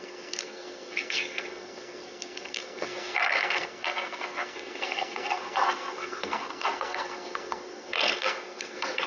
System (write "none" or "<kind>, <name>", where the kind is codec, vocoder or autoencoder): codec, SNAC